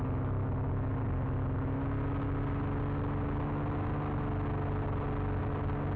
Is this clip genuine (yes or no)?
yes